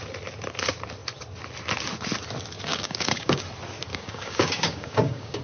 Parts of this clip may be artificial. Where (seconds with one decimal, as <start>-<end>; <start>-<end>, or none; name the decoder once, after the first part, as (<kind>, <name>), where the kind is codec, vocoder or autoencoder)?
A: 2.7-3.4 (codec, DAC); 3.9-5.4